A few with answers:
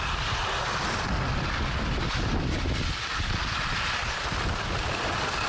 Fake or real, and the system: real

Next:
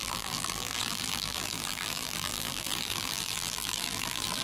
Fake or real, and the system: fake, vocoder, BigVGAN v2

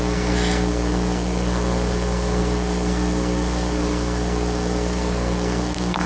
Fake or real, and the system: fake, codec, SNAC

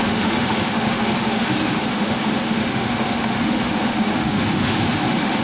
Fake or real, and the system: fake, autoencoder, DAC-VAE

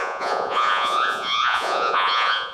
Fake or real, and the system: fake, vocoder, Vocos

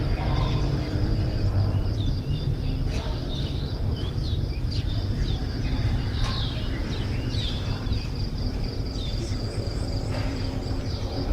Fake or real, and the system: fake, vocoder, BigVGAN v2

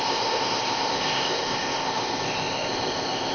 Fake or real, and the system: fake, codec, ZipCodec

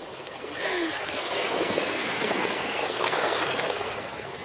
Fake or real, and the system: fake, codec, SNAC